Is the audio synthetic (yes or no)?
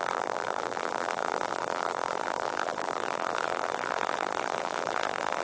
yes